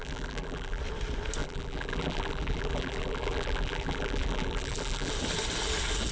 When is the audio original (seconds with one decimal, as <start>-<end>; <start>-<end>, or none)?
0.8-1.4; 5.1-6.1